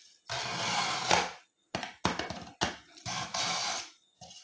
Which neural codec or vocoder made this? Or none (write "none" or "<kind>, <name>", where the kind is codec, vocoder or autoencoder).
none